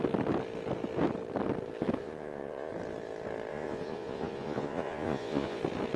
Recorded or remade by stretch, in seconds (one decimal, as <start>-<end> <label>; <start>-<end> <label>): 0.0-2.0 recorded; 2.0-2.7 remade; 2.7-3.5 recorded; 3.5-5.6 remade; 5.6-6.0 recorded